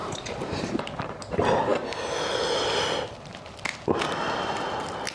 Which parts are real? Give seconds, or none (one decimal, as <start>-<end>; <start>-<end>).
0.8-5.1

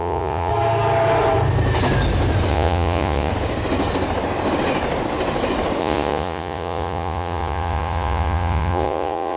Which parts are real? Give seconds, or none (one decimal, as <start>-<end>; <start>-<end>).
0.5-2.5; 3.3-5.8